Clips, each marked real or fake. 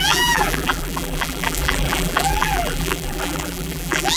fake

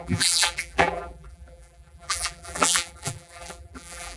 fake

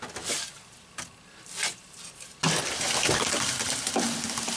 real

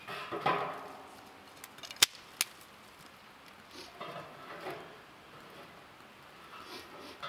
real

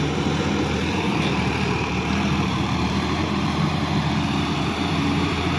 fake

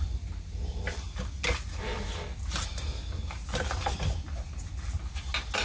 real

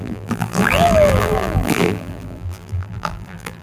fake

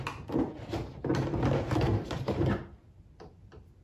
real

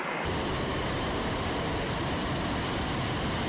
fake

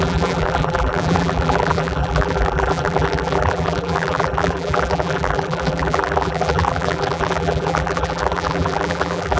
fake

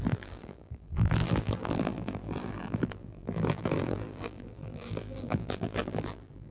fake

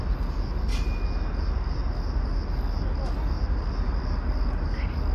real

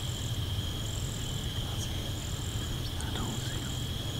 real